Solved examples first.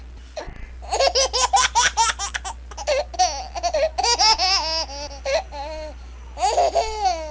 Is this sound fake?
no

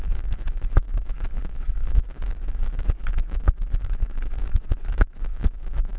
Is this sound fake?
yes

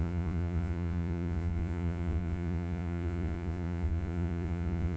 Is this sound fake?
yes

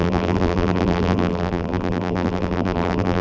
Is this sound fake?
yes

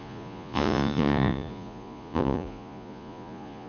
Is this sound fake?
yes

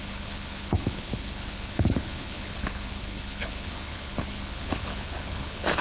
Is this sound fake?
yes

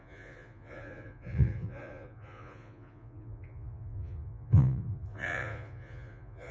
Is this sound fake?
yes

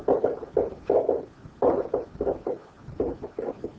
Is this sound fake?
no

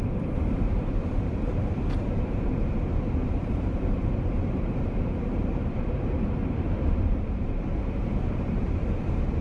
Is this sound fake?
yes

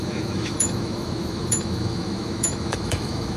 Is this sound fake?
yes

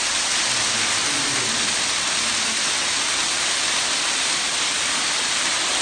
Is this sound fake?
no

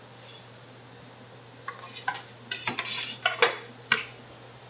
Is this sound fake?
no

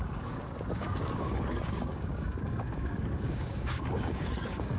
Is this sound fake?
yes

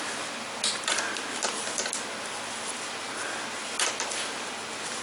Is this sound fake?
no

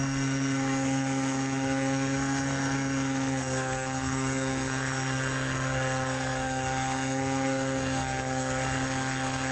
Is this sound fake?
yes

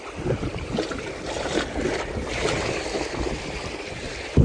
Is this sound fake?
no